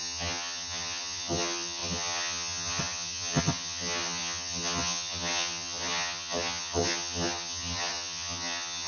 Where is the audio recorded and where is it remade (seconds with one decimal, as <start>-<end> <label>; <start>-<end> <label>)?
0.0-8.9 remade